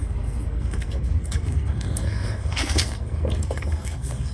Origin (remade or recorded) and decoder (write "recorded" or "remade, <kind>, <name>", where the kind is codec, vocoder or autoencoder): remade, codec, SNAC